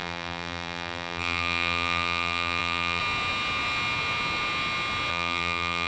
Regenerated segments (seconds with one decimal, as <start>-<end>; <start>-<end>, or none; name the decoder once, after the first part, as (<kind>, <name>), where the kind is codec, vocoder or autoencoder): 0.0-3.0 (vocoder, BigVGAN v2); 5.1-5.9